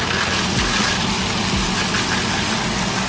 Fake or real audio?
real